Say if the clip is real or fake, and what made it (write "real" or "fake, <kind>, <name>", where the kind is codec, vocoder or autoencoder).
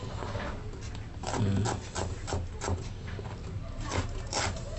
real